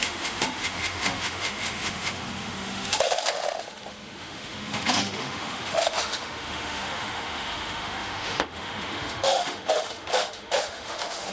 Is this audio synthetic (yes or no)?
yes